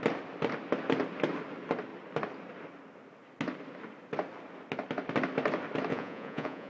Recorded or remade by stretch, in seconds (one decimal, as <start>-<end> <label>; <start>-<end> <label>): 0.0-5.9 recorded; 5.9-6.7 remade